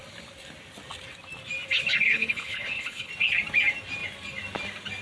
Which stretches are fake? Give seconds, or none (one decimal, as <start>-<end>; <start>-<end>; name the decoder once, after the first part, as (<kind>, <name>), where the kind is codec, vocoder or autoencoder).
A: 2.1-3.1 (codec, HILCodec)